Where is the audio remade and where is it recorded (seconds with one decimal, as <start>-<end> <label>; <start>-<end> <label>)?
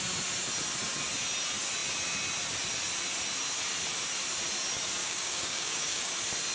0.0-5.0 recorded; 5.0-6.1 remade; 6.1-6.5 recorded